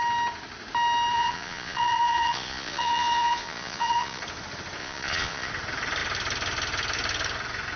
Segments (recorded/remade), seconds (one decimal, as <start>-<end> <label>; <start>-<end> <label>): 0.0-1.1 recorded; 1.1-4.2 remade; 4.2-4.8 recorded; 4.8-5.5 remade; 5.5-7.8 recorded